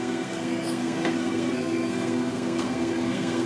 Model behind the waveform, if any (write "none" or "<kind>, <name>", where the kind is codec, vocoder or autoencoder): codec, SNAC